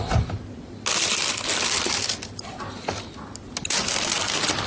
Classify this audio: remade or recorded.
recorded